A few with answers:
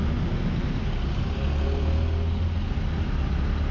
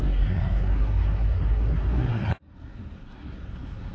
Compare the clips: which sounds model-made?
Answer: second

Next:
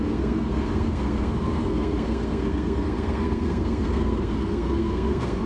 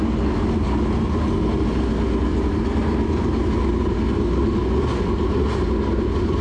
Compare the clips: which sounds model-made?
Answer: first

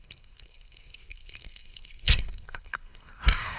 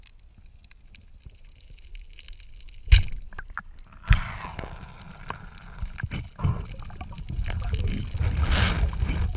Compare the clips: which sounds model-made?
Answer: first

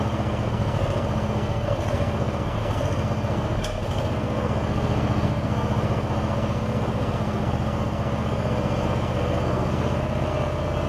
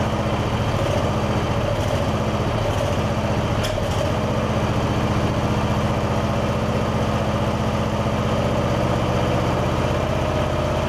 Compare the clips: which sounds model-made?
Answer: first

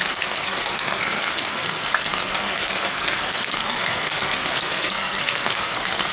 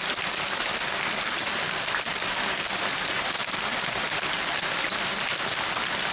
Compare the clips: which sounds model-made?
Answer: first